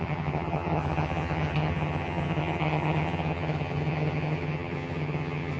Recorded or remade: remade